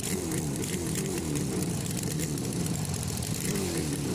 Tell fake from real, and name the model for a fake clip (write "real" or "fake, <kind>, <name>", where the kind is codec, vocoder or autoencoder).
fake, vocoder, BigVGAN v2